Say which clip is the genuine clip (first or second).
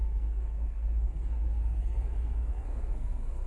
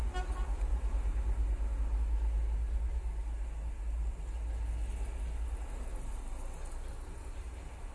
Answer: second